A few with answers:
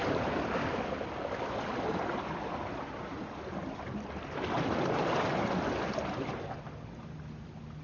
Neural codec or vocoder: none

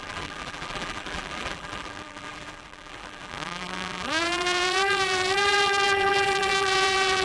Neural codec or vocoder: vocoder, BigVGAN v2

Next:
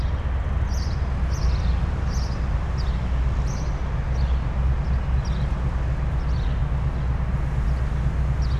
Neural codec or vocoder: none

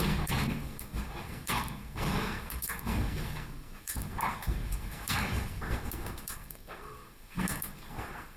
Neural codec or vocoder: codec, SNAC